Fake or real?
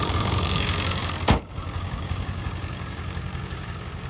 fake